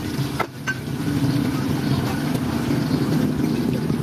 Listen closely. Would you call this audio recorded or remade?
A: recorded